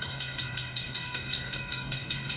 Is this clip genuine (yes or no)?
no